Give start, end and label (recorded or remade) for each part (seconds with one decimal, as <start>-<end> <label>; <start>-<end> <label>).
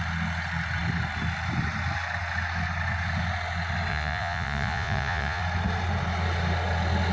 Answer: 0.0-3.9 recorded; 3.9-5.4 remade; 5.4-7.1 recorded